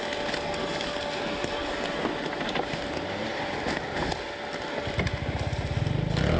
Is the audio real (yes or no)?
yes